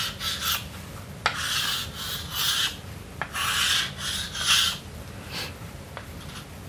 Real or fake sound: real